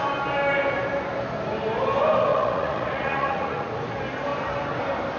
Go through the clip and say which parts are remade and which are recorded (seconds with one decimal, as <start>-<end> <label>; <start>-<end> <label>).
0.0-2.3 recorded; 2.3-3.7 remade; 3.7-5.2 recorded